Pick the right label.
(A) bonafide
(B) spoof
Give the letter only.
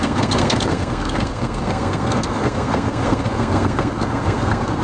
B